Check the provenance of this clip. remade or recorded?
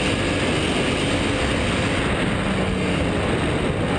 recorded